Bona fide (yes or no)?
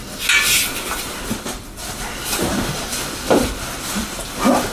yes